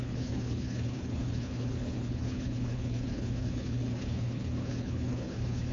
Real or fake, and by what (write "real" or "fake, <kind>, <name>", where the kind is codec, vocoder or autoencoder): fake, codec, HILCodec